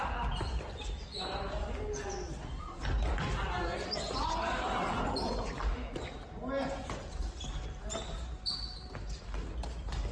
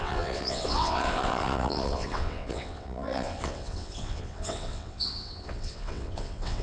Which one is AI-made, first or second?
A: second